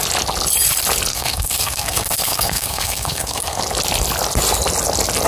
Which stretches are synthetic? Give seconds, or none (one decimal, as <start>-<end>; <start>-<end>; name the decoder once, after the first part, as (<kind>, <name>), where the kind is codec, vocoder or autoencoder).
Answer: 1.1-3.6 (codec, SNAC)